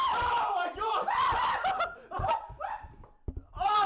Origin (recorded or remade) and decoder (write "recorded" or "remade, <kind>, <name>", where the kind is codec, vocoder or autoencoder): remade, vocoder, BigVGAN v2